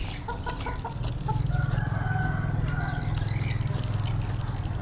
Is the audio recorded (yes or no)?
yes